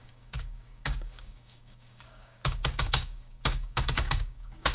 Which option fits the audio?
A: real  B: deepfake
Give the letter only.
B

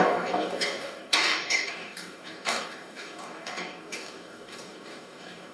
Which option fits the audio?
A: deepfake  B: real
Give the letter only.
A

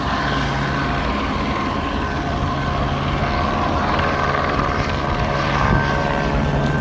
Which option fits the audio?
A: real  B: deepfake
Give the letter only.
A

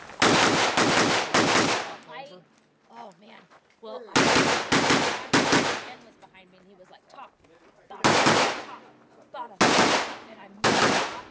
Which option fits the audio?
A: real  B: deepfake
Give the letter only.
A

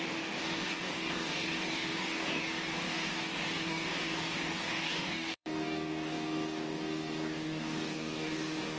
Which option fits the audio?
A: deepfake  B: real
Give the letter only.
A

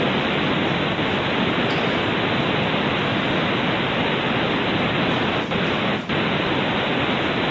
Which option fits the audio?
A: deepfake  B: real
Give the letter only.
B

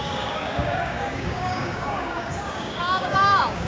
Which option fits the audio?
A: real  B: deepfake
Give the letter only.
B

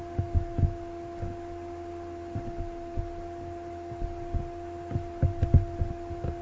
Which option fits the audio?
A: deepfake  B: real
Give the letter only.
B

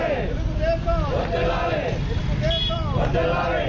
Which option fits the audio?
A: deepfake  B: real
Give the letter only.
B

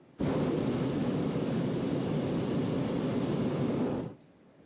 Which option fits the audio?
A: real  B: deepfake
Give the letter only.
A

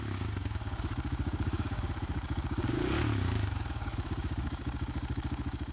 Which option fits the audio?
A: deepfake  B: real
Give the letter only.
A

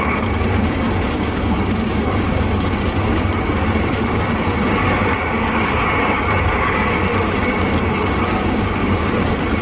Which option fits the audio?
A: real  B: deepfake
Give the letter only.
B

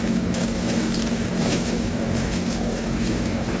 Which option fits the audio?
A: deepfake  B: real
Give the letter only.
A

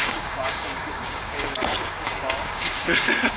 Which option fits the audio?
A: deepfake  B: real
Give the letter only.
A